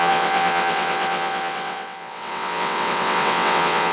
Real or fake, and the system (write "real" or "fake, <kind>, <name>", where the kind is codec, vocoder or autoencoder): fake, vocoder, WaveNeXt